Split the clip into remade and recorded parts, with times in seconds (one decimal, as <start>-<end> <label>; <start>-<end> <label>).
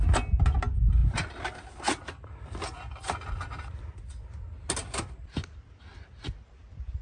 0.0-7.0 recorded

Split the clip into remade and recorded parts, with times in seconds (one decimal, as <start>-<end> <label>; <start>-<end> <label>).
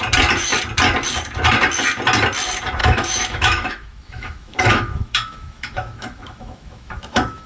0.0-2.8 recorded; 2.8-7.5 remade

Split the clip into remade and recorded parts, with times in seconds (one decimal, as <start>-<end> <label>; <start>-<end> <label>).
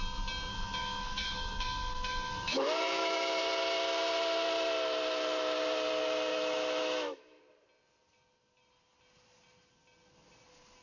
0.0-0.5 recorded; 0.5-3.4 remade; 3.4-6.3 recorded; 6.3-7.4 remade; 7.4-10.8 recorded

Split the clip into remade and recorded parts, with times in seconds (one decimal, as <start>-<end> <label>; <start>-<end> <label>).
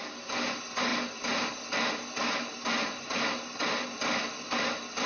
0.0-5.1 recorded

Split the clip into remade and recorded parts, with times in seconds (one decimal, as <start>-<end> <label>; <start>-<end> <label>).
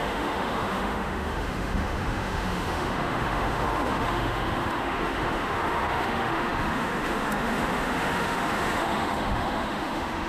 0.0-10.3 remade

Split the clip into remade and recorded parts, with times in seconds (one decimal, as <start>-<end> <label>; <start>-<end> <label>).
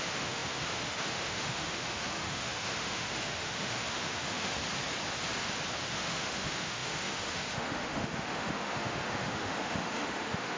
0.0-4.6 remade; 4.6-5.9 recorded; 5.9-10.6 remade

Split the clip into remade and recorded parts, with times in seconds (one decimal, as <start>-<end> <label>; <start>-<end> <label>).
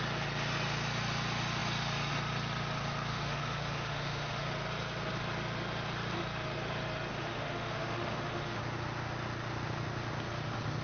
0.0-3.1 recorded; 3.1-4.5 remade; 4.5-7.1 recorded; 7.1-8.6 remade; 8.6-10.8 recorded